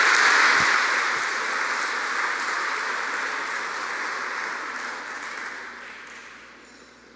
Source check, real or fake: real